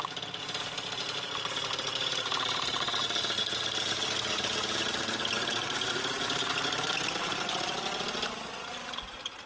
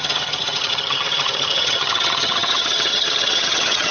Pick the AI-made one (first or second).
second